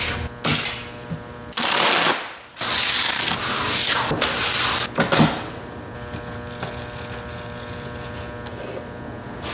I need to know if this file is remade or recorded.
recorded